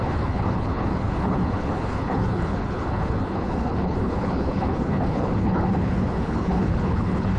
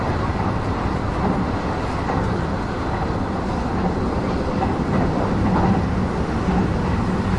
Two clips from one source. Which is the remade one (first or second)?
first